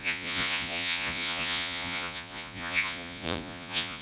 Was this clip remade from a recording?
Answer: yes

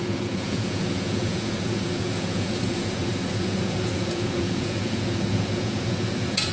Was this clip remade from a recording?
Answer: yes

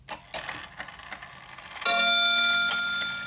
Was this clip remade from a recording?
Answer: no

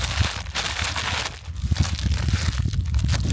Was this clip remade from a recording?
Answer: no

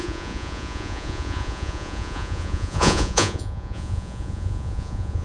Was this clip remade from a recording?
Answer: yes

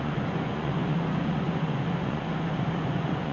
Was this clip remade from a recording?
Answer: yes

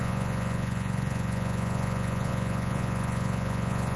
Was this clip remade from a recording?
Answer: yes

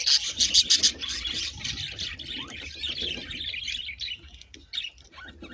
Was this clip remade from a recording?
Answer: no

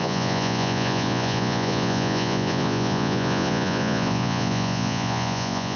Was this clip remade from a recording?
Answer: yes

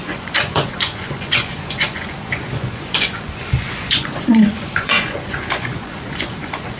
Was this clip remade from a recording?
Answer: yes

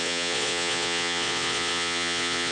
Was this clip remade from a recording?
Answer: yes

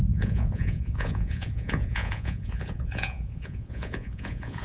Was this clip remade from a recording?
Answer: yes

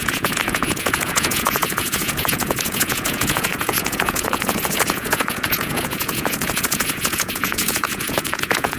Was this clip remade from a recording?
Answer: yes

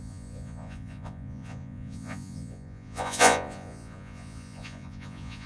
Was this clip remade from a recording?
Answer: yes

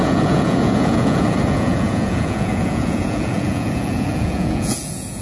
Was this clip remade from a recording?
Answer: yes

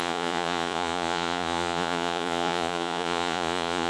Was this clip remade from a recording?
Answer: yes